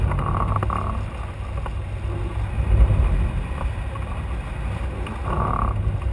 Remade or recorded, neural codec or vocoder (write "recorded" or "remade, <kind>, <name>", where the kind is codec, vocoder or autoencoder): recorded